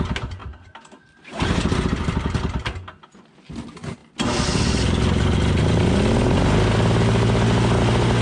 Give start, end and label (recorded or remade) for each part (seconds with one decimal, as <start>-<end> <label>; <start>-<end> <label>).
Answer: 0.0-0.4 recorded; 0.4-2.6 remade; 2.6-4.0 recorded; 4.0-4.7 remade; 4.7-8.2 recorded